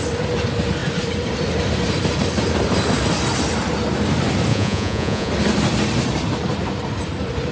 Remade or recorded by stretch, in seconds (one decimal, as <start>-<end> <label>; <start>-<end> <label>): 0.0-4.5 recorded; 4.5-5.3 remade; 5.3-7.5 recorded